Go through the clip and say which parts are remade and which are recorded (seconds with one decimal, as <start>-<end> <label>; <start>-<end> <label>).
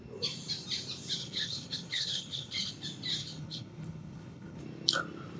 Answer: 0.0-1.2 recorded; 1.2-2.7 remade; 2.7-3.2 recorded; 3.2-4.6 remade; 4.6-5.4 recorded